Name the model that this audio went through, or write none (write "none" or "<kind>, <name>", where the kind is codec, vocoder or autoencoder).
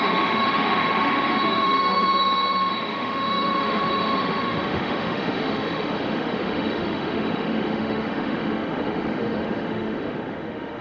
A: autoencoder, DAC-VAE